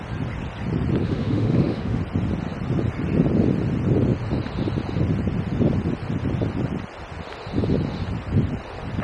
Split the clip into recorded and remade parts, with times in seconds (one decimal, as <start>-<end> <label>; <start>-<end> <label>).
0.0-1.0 recorded; 1.0-2.0 remade; 2.0-9.0 recorded